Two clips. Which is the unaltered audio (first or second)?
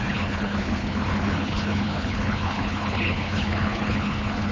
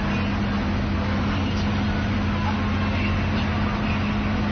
second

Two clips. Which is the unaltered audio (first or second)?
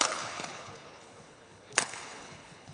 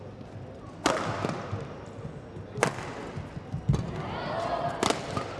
second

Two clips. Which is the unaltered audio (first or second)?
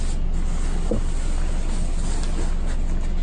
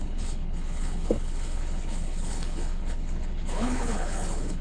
first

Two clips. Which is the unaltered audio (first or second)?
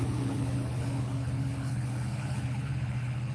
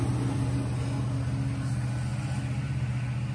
second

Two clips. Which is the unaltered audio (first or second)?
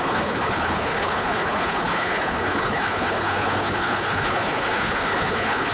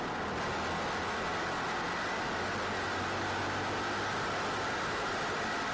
second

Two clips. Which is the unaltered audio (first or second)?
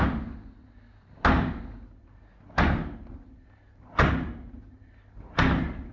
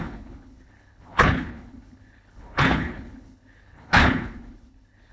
first